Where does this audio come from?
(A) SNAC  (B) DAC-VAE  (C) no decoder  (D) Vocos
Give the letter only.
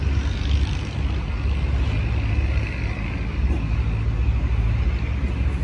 C